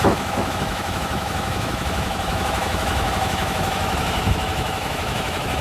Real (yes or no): no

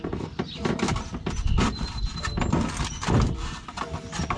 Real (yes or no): yes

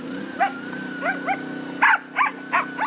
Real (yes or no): yes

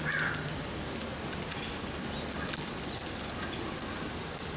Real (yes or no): yes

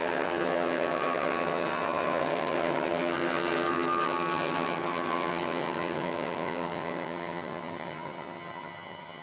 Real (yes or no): no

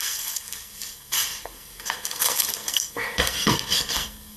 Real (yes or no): no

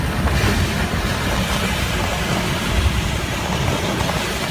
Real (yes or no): yes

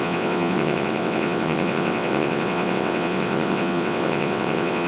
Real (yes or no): no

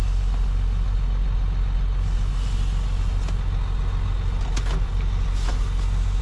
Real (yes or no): yes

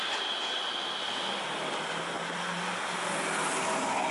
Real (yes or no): yes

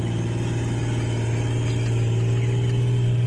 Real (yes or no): yes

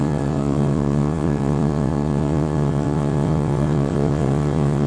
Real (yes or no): no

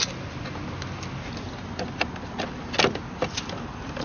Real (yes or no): yes